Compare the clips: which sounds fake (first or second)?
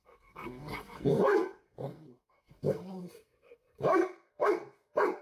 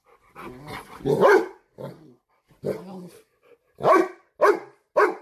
first